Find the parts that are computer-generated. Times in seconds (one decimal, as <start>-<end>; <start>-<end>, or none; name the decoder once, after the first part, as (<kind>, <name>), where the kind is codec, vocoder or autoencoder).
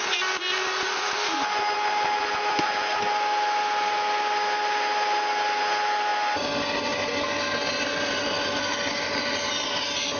none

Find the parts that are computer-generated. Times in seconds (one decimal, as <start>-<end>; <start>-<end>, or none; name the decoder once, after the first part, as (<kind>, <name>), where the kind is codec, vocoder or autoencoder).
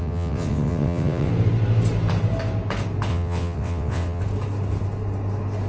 0.0-1.3 (vocoder, WaveNeXt); 3.1-4.2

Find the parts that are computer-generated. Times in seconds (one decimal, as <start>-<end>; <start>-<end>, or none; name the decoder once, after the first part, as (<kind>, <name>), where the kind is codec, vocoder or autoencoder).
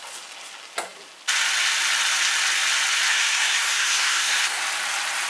3.1-4.6 (codec, SNAC)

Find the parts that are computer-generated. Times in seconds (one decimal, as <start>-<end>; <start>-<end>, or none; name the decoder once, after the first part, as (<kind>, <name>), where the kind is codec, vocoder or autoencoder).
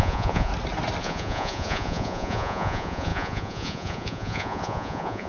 0.0-0.5 (vocoder, Vocos); 1.0-5.3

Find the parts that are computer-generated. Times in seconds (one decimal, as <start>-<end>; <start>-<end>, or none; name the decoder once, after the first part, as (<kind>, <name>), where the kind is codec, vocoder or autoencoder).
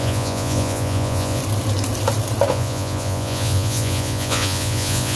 0.0-1.4 (vocoder, Vocos); 2.5-5.2